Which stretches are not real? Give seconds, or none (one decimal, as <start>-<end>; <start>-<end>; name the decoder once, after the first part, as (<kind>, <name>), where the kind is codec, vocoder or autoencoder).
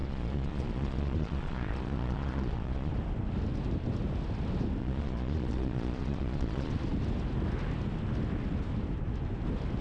0.0-2.9 (vocoder, Vocos); 4.8-6.7